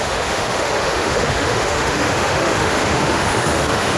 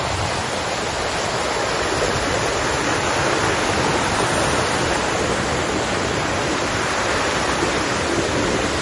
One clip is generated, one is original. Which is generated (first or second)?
first